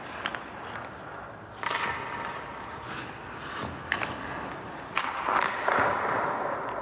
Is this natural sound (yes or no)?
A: yes